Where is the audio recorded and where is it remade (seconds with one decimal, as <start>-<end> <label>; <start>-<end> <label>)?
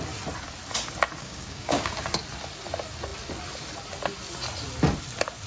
0.0-1.2 recorded; 1.2-1.9 remade; 1.9-5.5 recorded